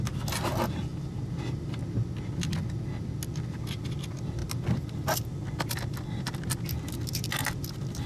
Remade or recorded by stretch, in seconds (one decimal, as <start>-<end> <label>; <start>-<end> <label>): 0.0-8.1 recorded

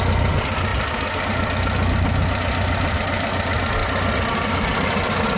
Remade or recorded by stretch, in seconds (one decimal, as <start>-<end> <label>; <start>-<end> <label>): 0.0-5.4 recorded

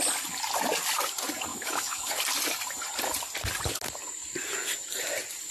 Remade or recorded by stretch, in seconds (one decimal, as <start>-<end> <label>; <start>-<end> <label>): 0.0-1.5 recorded; 1.5-2.1 remade; 2.1-5.5 recorded